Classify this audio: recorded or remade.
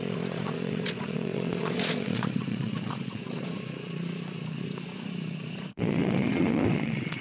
remade